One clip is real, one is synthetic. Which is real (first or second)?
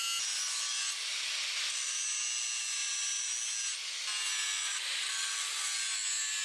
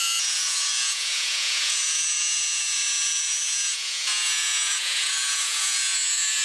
first